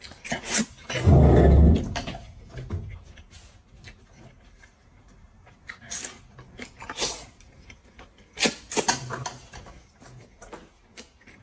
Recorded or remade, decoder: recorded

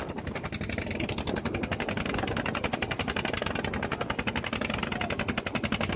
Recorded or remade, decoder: recorded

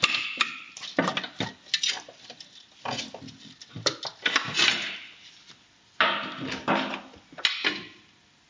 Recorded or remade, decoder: recorded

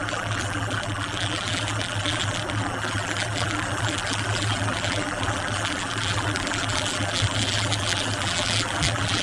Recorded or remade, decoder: remade, vocoder, BigVGAN v2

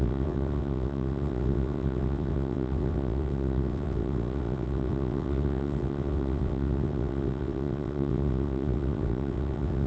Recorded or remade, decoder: remade, vocoder, WaveNeXt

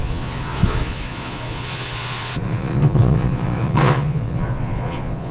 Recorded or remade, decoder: remade, vocoder, Vocos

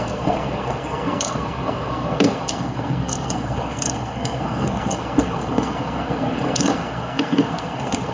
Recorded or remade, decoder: remade, codec, SNAC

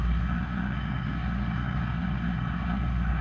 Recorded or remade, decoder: remade, codec, SNAC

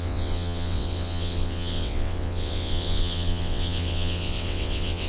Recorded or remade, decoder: remade, vocoder, WaveNeXt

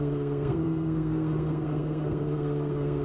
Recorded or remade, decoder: remade, codec, SNAC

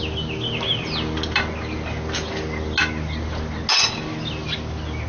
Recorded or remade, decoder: recorded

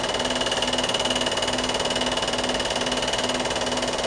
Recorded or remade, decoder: recorded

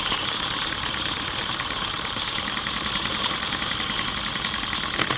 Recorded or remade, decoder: remade, vocoder, BigVGAN v2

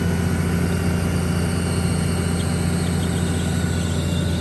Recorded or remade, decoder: recorded